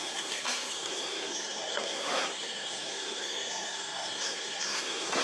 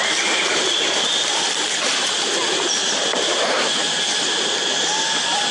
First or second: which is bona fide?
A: second